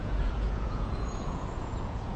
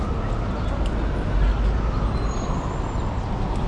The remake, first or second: first